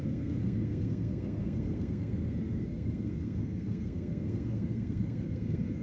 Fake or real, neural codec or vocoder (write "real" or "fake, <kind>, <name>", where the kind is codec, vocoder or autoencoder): fake, codec, SNAC